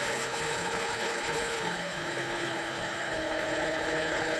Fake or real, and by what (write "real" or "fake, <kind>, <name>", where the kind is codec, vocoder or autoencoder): fake, codec, HILCodec